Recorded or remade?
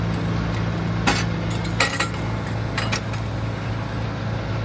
recorded